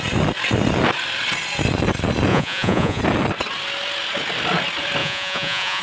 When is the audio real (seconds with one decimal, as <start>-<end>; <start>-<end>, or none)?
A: 0.0-2.3; 3.0-5.0